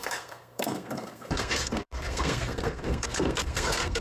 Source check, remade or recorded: remade